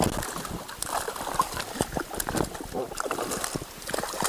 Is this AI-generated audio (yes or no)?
no